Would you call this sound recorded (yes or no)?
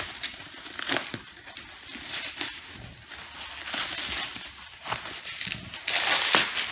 yes